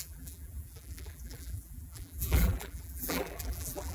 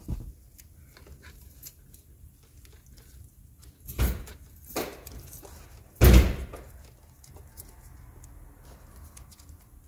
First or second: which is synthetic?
first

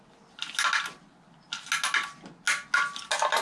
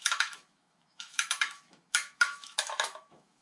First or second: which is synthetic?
second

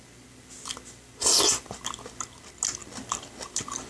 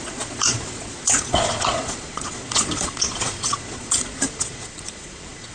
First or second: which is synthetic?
second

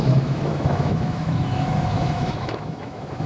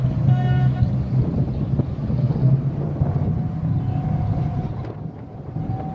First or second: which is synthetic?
first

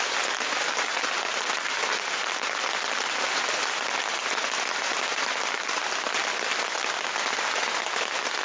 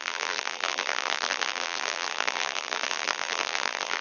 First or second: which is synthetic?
second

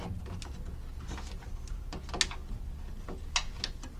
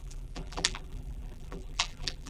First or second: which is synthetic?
second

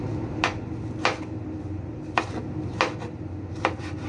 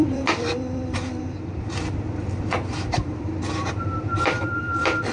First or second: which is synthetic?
second